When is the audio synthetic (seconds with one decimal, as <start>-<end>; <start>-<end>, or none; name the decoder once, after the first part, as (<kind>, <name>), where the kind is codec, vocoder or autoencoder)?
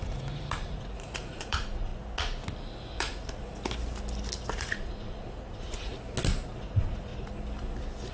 0.0-1.9 (vocoder, Vocos); 2.9-3.4; 4.6-5.9; 6.6-7.1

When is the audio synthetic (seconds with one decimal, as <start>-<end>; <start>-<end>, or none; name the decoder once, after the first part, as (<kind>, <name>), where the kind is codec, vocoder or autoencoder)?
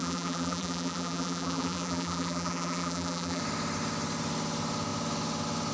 0.0-3.4 (vocoder, BigVGAN v2)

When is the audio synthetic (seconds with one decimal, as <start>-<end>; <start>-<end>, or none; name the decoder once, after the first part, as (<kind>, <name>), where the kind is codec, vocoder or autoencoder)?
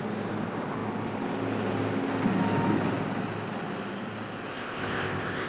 4.5-5.5 (codec, ZipCodec)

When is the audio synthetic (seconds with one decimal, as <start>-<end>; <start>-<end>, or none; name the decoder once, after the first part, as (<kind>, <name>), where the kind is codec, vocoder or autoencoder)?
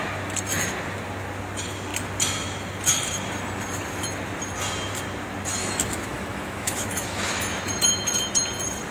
5.6-7.6 (autoencoder, DAC-VAE)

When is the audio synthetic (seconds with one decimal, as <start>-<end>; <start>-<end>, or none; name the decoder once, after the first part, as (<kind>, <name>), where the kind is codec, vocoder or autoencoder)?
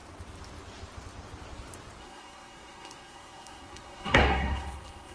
2.0-5.1 (codec, SNAC)